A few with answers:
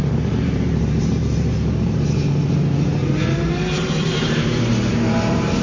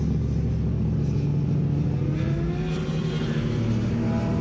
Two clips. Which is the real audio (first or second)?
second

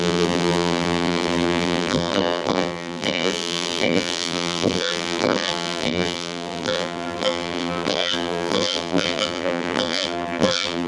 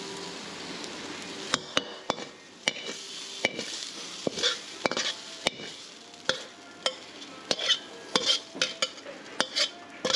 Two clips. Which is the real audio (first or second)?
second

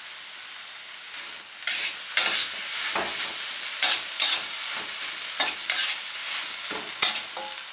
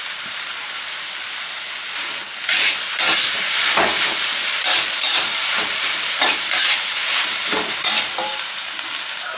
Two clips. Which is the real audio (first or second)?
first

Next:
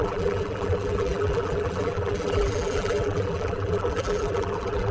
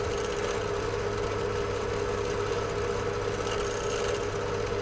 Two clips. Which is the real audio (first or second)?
second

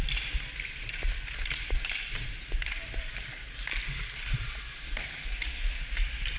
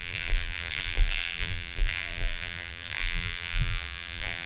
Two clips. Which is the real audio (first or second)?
first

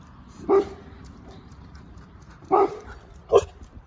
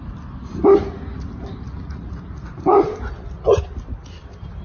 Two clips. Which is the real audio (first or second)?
second